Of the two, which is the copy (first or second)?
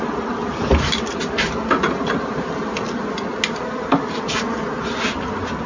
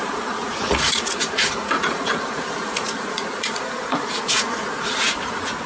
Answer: second